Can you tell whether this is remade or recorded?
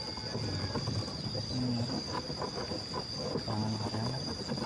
recorded